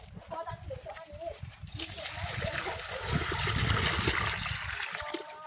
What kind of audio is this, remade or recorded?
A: recorded